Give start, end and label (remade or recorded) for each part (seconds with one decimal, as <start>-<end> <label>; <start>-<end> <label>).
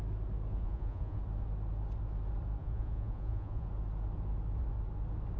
0.0-0.5 recorded; 0.5-1.2 remade; 1.2-2.6 recorded; 2.6-3.7 remade; 3.7-5.4 recorded